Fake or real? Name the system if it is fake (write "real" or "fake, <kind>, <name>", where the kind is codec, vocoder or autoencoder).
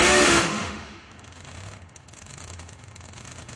fake, autoencoder, DAC-VAE